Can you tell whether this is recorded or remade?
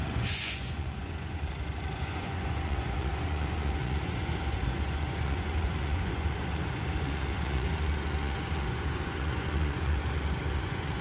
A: remade